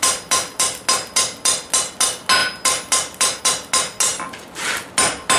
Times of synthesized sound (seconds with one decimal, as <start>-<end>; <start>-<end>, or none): none